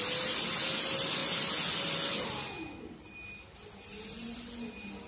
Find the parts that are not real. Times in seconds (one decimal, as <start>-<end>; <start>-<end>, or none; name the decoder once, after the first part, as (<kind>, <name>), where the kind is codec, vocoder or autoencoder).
none